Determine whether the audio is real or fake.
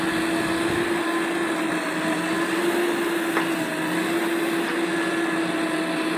real